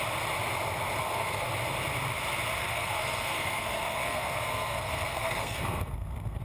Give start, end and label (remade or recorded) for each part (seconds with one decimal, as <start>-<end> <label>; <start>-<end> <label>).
0.0-1.0 recorded; 1.0-1.5 remade; 1.5-2.6 recorded; 2.6-6.4 remade